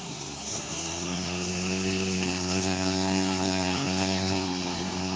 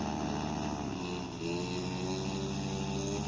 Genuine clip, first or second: second